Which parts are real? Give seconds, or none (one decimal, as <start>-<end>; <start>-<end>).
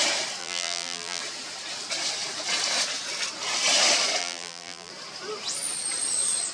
0.0-0.4; 1.2-4.2; 4.9-6.5